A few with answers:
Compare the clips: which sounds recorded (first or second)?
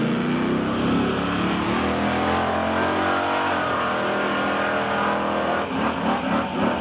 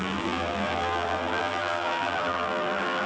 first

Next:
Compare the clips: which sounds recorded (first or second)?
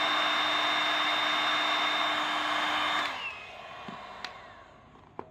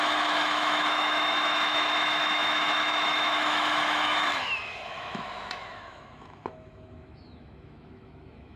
first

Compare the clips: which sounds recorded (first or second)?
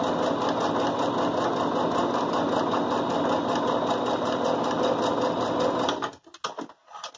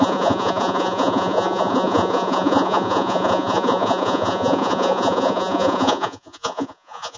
first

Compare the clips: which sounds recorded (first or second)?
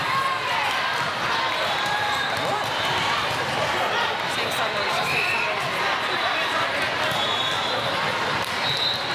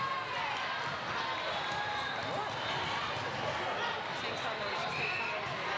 second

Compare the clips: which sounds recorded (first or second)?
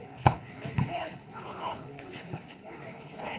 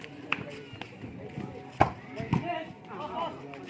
second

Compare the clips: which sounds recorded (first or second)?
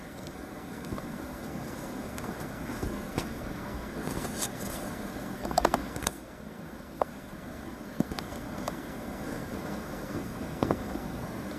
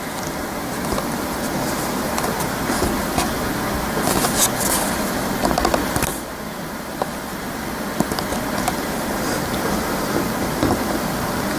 second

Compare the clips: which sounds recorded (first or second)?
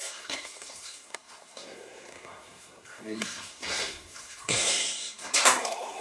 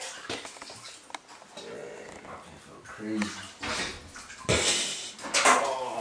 second